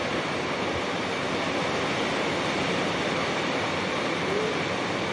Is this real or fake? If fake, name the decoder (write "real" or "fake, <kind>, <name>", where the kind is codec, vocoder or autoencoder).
real